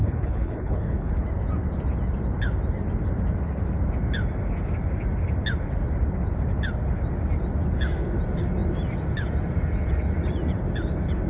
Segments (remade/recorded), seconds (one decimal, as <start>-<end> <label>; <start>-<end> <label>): 0.0-1.1 remade; 1.1-11.3 recorded